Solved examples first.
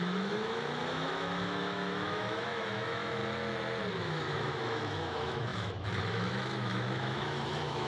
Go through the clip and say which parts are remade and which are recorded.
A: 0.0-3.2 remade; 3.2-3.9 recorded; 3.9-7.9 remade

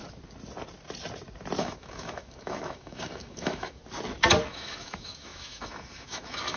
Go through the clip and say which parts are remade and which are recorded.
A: 0.0-1.6 recorded; 1.6-3.8 remade; 3.8-4.5 recorded; 4.5-6.6 remade

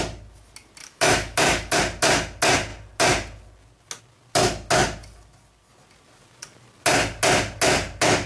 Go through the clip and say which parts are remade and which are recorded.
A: 0.0-0.8 recorded; 0.8-1.8 remade; 1.8-8.3 recorded